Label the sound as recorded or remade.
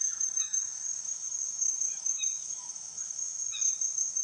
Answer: remade